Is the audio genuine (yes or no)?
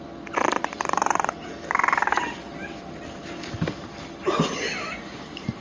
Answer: yes